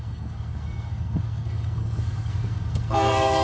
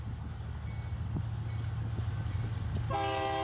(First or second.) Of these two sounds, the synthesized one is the first